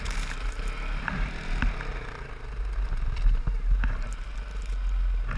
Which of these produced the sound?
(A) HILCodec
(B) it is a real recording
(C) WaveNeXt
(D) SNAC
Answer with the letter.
B